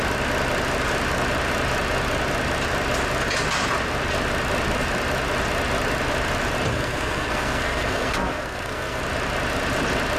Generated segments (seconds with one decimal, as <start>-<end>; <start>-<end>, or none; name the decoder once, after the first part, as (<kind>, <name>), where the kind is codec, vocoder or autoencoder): 6.7-9.0 (codec, SNAC)